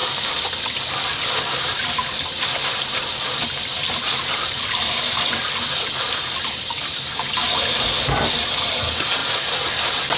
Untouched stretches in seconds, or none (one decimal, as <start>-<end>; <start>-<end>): 1.3-3.4; 6.7-10.2